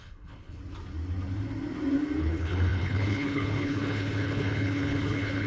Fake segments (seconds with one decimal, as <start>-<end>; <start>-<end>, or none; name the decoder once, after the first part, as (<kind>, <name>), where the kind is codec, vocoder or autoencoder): 0.0-0.6 (codec, HILCodec); 2.2-5.5